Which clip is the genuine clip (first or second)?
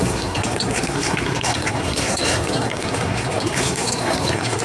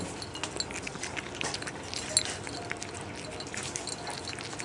second